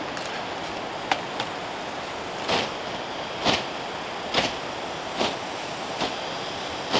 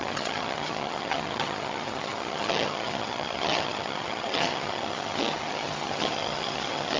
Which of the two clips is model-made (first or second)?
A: second